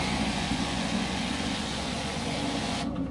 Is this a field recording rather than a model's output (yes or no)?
no